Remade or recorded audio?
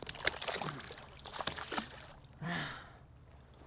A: remade